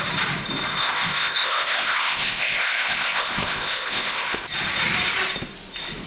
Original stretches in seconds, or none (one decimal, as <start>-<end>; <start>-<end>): 0.0-0.8; 4.5-6.1